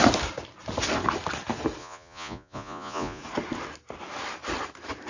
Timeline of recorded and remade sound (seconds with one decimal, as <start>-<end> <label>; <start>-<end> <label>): 0.0-1.8 recorded; 1.8-3.2 remade; 3.2-5.1 recorded

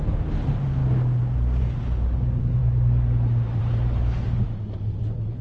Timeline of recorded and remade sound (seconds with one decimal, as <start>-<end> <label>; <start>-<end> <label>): 0.0-5.4 recorded

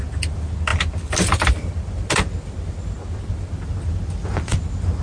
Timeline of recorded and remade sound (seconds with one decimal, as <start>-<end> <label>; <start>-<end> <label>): 0.0-5.0 recorded

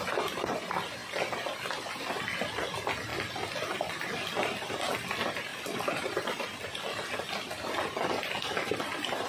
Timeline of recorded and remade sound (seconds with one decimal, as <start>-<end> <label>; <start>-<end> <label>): 0.0-5.5 recorded; 5.5-6.7 remade; 6.7-9.3 recorded

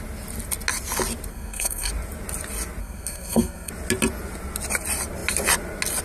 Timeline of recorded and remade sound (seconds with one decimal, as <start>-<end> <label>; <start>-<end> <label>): 0.0-1.3 recorded; 1.3-1.9 remade; 1.9-2.8 recorded; 2.8-3.7 remade; 3.7-6.0 recorded